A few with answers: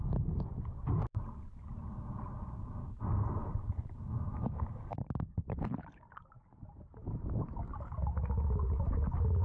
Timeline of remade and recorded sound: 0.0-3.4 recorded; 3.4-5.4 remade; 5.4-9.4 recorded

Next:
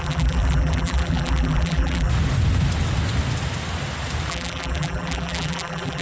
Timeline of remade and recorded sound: 0.0-2.1 remade; 2.1-4.3 recorded; 4.3-6.0 remade